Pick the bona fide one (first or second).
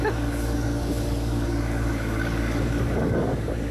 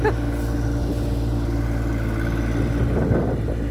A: second